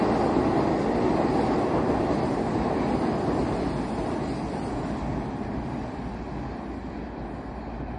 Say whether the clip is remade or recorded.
recorded